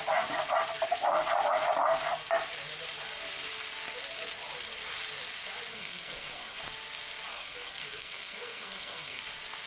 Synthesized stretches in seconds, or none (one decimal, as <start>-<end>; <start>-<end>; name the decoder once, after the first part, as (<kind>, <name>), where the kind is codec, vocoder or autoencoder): 5.7-6.6 (codec, SNAC); 7.3-9.2